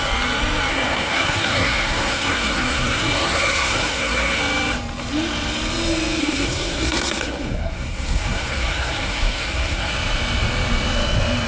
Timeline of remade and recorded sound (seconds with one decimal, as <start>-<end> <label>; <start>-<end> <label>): 0.0-0.7 recorded; 0.7-4.4 remade; 4.4-6.2 recorded; 6.2-9.9 remade; 9.9-11.5 recorded